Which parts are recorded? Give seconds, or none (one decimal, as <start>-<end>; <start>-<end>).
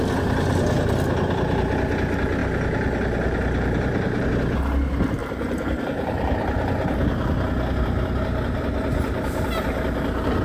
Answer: 0.0-2.4; 4.3-5.2; 5.8-10.4